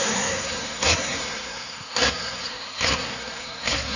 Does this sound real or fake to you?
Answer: fake